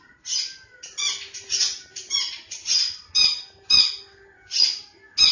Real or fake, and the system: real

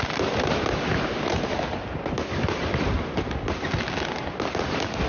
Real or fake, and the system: real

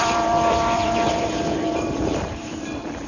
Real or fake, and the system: fake, vocoder, BigVGAN v2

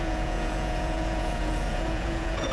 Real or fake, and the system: fake, vocoder, Vocos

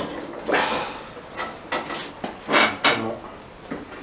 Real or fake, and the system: real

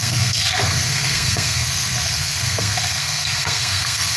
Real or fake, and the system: fake, codec, SNAC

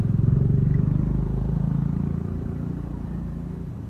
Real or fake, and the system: fake, vocoder, BigVGAN v2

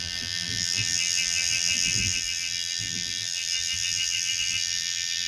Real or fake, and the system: fake, vocoder, BigVGAN v2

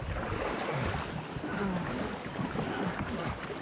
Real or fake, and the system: real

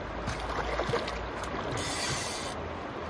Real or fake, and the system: real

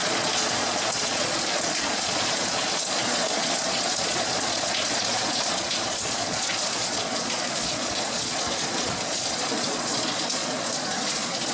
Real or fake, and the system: fake, vocoder, Vocos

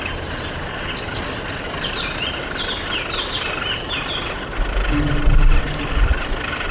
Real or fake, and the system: real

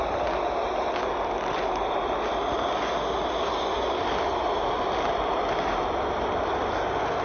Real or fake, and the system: real